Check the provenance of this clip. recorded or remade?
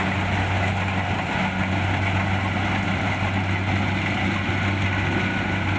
recorded